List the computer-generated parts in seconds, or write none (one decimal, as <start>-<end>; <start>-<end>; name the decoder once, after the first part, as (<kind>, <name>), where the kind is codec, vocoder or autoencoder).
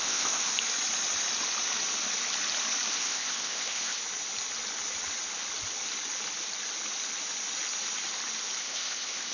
0.0-0.5 (codec, ZipCodec); 2.9-4.0; 8.6-9.3